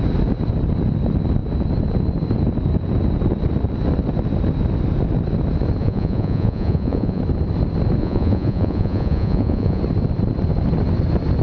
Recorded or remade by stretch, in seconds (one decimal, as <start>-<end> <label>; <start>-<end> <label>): 0.0-5.8 recorded; 5.8-7.2 remade; 7.2-8.0 recorded; 8.0-9.8 remade; 9.8-11.4 recorded